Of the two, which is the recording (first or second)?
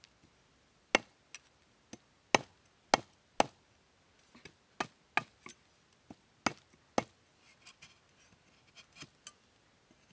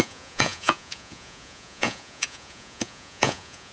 first